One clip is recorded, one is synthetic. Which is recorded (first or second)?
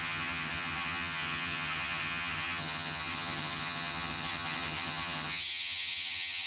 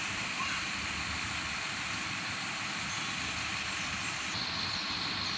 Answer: second